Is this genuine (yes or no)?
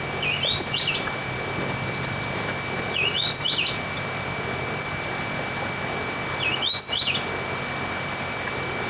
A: yes